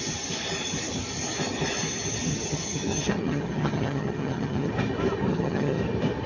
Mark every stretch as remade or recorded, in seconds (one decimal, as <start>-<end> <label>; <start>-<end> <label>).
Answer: 0.0-2.3 recorded; 2.3-4.7 remade; 4.7-5.3 recorded; 5.3-5.8 remade; 5.8-6.3 recorded